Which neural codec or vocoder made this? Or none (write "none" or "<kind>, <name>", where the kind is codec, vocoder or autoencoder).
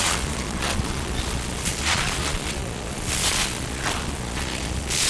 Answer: vocoder, Vocos